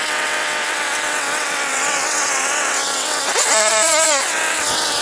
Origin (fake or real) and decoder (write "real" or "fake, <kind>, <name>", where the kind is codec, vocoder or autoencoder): fake, vocoder, WaveNeXt